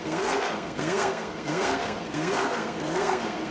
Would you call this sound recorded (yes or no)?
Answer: no